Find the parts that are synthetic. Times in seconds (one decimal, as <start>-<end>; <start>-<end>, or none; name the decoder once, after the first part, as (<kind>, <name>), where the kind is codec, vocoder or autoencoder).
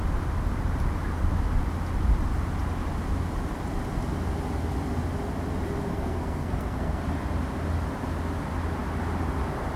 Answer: 5.9-7.0 (codec, SNAC)